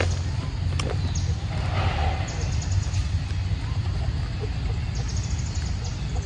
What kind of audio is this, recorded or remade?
recorded